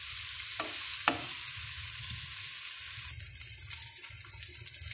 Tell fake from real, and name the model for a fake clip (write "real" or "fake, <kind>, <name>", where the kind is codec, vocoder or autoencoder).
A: real